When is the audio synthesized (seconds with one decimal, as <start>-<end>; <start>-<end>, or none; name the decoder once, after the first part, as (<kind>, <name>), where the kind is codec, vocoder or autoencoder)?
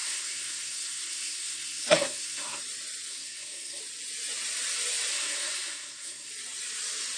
0.0-2.6 (codec, SNAC); 3.1-3.8; 5.1-6.3